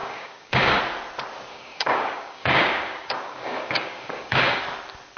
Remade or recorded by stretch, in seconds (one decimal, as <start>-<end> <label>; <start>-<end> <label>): 0.0-0.8 remade; 0.8-1.5 recorded; 1.5-4.6 remade; 4.6-5.2 recorded